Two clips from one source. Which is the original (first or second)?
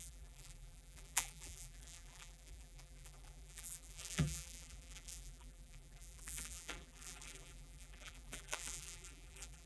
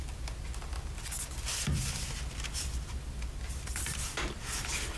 second